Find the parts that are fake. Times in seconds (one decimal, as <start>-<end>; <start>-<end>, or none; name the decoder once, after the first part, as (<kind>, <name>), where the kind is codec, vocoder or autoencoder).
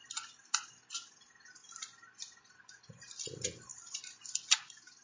none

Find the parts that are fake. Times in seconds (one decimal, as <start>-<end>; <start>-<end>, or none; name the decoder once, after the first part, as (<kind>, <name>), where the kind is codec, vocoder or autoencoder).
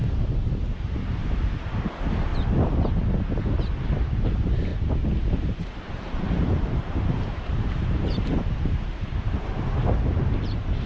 0.0-2.3 (vocoder, BigVGAN v2); 3.9-4.7; 5.3-10.9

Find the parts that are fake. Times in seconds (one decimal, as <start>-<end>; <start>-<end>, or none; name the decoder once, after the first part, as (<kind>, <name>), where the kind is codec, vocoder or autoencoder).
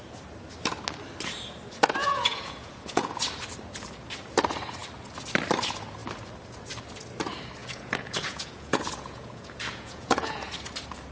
2.0-3.2 (vocoder, Vocos); 7.6-10.5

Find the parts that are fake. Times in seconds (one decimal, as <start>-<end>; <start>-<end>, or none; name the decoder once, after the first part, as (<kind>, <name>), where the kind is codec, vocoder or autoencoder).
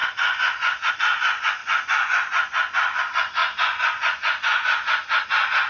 0.0-5.7 (vocoder, Vocos)